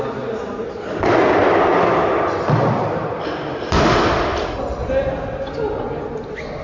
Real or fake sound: fake